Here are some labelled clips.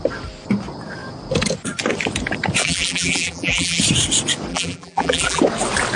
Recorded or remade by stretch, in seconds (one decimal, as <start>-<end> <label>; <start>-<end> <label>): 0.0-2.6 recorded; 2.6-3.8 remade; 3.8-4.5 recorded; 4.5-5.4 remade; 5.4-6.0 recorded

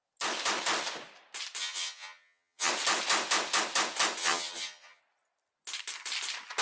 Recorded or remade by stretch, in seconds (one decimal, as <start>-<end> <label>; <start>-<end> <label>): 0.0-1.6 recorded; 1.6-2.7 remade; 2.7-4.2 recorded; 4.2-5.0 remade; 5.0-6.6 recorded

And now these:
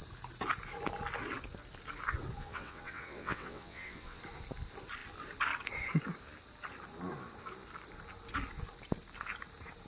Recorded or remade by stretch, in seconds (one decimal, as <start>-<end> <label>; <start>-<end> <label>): 0.0-2.4 recorded; 2.4-4.2 remade; 4.2-9.9 recorded